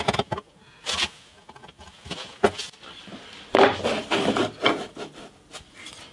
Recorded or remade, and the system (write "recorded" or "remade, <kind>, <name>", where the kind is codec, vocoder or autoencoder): recorded